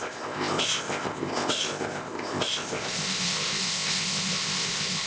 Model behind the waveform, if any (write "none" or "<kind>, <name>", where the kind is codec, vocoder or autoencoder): codec, ZipCodec